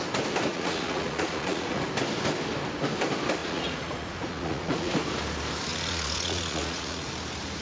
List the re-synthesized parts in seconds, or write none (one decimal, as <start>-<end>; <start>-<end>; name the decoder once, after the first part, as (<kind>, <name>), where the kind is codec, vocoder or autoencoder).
0.5-1.8 (vocoder, Vocos); 3.4-4.9; 5.7-7.1